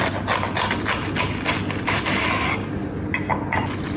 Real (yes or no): yes